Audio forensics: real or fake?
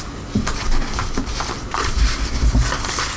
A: real